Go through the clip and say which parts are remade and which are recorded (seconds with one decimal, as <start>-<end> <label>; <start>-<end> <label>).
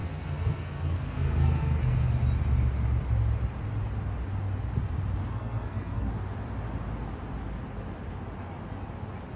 0.0-2.1 remade; 2.1-5.3 recorded; 5.3-6.1 remade; 6.1-9.4 recorded